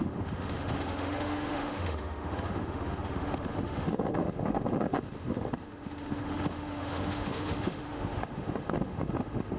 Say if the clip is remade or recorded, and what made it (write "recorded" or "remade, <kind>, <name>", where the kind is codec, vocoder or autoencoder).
remade, autoencoder, DAC-VAE